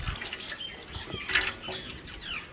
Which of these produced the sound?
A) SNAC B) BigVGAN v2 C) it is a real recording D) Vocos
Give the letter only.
C